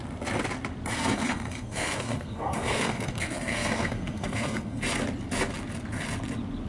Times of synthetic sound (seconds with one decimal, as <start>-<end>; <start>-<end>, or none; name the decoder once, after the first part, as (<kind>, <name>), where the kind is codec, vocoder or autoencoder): 1.0-4.8 (codec, SNAC)